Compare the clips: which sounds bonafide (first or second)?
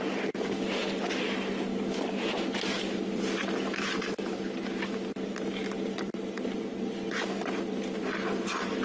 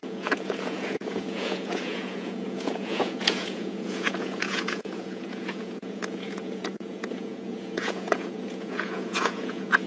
first